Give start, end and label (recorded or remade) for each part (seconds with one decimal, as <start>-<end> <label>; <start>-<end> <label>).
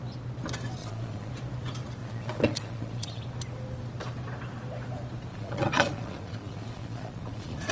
0.0-0.8 recorded; 0.8-1.3 remade; 1.3-2.0 recorded; 2.0-3.2 remade; 3.2-5.3 recorded; 5.3-7.7 remade